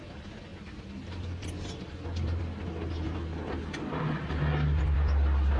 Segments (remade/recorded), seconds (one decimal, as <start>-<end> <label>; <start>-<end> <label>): 0.0-5.6 recorded